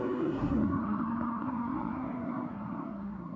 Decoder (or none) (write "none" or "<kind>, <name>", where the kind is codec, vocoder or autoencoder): codec, SNAC